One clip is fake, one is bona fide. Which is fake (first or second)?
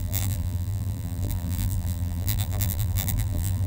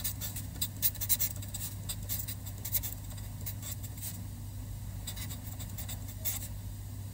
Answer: first